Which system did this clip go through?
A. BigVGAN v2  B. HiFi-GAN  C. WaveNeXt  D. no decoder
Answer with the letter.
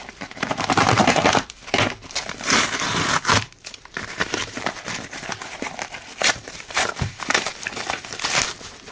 A